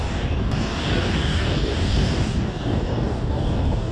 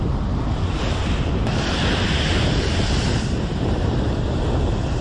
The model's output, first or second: first